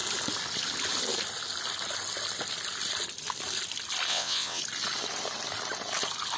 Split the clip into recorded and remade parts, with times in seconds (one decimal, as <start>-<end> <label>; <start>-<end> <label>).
0.0-4.1 recorded; 4.1-4.6 remade; 4.6-6.4 recorded